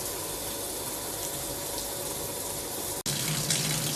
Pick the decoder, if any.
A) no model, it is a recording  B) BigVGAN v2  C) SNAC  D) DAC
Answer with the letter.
A